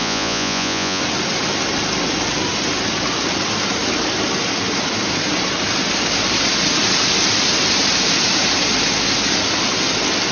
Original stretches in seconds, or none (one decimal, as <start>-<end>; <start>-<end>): 1.0-10.3